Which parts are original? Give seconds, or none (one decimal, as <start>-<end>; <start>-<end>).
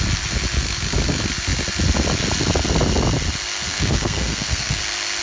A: 0.0-3.7; 4.8-5.2